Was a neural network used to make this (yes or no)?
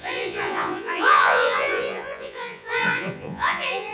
yes